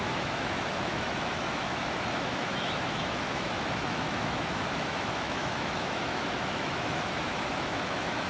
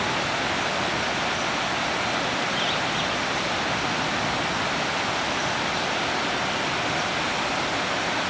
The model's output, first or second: first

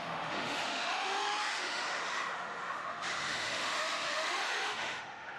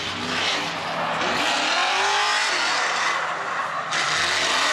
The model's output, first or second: first